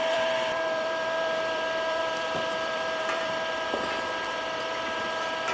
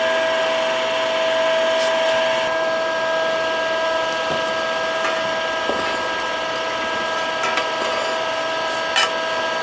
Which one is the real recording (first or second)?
second